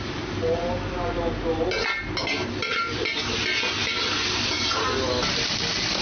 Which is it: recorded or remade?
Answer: recorded